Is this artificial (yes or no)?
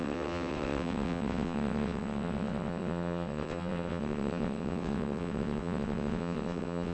yes